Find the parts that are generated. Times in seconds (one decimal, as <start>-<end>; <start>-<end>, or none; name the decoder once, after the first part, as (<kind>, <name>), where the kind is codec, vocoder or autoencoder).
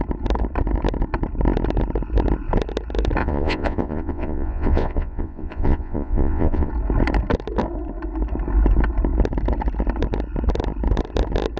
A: 3.2-6.7 (vocoder, Vocos)